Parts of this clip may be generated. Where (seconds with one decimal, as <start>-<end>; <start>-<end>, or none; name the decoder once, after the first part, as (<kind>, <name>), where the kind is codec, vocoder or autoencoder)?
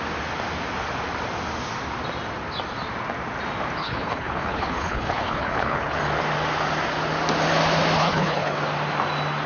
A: 3.8-6.0 (codec, HILCodec); 8.0-8.6